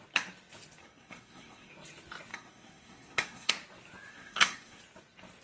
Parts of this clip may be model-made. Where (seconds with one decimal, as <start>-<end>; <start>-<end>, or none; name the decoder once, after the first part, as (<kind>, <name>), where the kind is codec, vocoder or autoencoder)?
0.8-1.7 (codec, SNAC); 2.3-3.5; 4.1-4.8